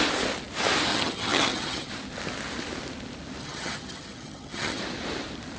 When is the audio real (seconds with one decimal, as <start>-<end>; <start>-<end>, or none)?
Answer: 0.0-0.9; 1.9-3.4; 4.8-5.6